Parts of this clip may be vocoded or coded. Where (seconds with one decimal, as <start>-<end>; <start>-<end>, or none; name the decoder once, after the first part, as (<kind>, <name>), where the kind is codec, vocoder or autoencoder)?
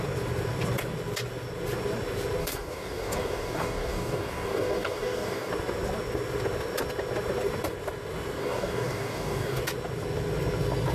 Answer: 2.4-5.5 (codec, DAC); 8.4-9.6